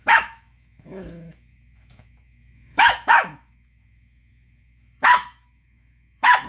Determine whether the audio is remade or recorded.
remade